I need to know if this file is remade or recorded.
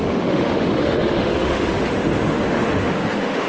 remade